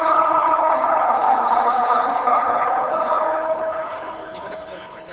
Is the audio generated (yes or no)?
yes